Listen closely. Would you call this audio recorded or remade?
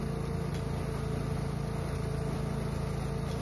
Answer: recorded